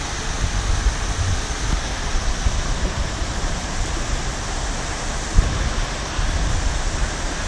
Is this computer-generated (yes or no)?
no